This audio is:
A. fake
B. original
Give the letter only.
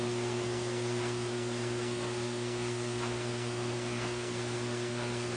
A